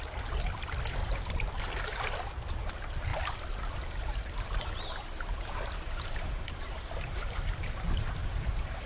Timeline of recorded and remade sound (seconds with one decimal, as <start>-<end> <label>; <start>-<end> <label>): 0.0-1.0 recorded; 1.0-1.6 remade; 1.6-3.1 recorded; 3.1-7.7 remade; 7.7-8.2 recorded; 8.2-8.9 remade